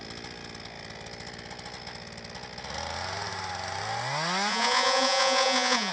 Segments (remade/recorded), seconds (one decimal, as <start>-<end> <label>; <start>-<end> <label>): 0.0-4.5 recorded; 4.5-5.9 remade